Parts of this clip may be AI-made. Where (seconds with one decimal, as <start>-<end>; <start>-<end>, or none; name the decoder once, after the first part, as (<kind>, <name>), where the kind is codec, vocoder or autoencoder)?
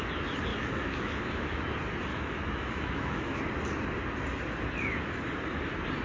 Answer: 0.5-1.6 (autoencoder, DAC-VAE); 2.1-3.4